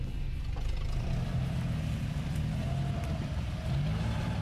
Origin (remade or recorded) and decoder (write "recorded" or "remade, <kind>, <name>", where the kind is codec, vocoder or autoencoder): remade, vocoder, BigVGAN v2